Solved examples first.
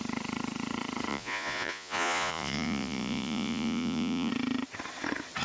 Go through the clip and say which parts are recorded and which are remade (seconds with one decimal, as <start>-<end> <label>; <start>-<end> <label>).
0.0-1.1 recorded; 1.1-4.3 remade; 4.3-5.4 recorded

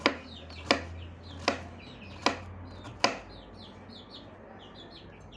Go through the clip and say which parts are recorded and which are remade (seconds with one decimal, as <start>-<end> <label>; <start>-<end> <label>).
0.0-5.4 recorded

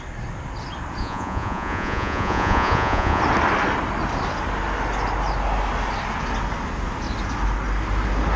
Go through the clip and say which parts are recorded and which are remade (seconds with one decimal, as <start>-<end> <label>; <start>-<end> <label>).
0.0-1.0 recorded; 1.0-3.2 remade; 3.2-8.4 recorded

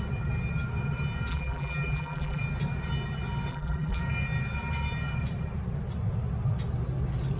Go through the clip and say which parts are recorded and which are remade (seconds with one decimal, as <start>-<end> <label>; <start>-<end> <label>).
0.0-1.3 recorded; 1.3-2.4 remade; 2.4-3.5 recorded; 3.5-4.0 remade; 4.0-7.4 recorded

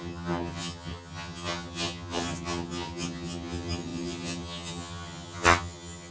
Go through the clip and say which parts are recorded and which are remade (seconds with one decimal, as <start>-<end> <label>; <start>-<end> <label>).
0.0-6.1 remade